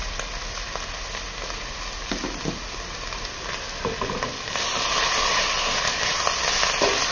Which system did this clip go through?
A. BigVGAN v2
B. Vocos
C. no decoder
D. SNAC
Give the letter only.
C